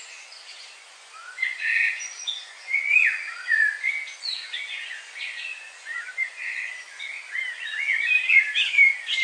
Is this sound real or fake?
fake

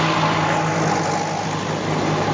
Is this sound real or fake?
real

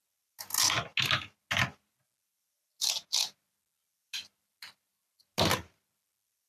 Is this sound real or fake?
real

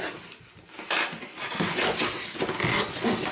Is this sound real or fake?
real